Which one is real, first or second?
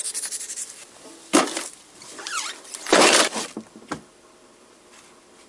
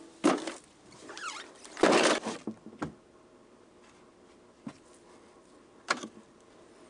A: second